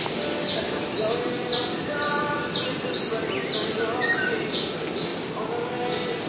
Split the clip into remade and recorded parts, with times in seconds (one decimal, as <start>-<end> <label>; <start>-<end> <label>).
0.0-6.3 recorded